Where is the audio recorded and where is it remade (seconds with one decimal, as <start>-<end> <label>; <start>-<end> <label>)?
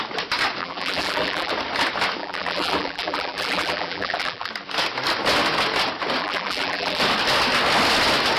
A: 0.0-0.6 recorded; 0.6-1.5 remade; 1.5-2.2 recorded; 2.2-4.5 remade; 4.5-6.2 recorded; 6.2-7.0 remade; 7.0-8.4 recorded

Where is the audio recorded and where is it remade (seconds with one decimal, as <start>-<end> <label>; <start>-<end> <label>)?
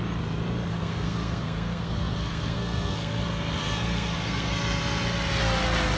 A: 0.0-0.7 recorded; 0.7-3.2 remade; 3.2-3.6 recorded; 3.6-4.5 remade; 4.5-6.0 recorded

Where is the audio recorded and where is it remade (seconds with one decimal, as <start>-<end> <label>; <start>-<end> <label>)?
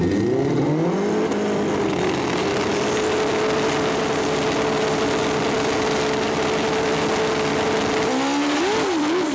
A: 0.0-9.3 recorded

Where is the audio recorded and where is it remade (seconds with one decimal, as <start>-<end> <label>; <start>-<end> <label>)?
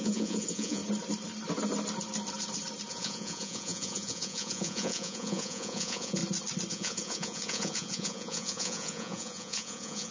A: 0.0-0.8 remade; 0.8-2.9 recorded; 2.9-6.2 remade; 6.2-6.7 recorded; 6.7-10.1 remade